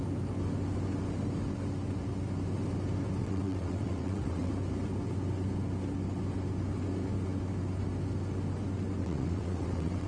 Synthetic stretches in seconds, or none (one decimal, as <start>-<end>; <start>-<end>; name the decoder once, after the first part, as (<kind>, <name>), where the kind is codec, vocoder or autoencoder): 3.2-4.5 (vocoder, WaveNeXt); 9.0-10.1